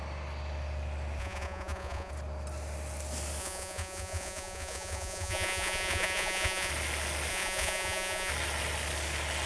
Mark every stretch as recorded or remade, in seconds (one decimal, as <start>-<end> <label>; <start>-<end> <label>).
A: 0.0-1.2 recorded; 1.2-2.1 remade; 2.1-3.4 recorded; 3.4-6.7 remade; 6.7-7.3 recorded; 7.3-8.3 remade; 8.3-9.5 recorded